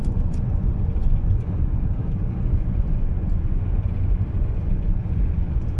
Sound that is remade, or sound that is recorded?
remade